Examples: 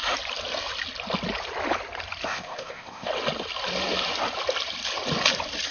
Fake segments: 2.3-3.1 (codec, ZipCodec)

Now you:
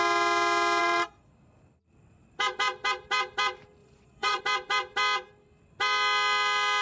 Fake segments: 0.8-1.3 (vocoder, Vocos); 3.8-4.4

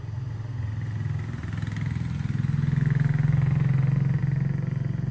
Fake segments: none

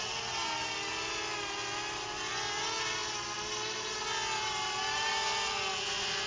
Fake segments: none

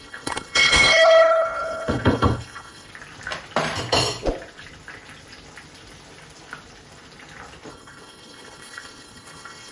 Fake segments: 0.0-2.9 (codec, HILCodec); 7.7-9.7